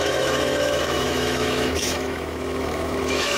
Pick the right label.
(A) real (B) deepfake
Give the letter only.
B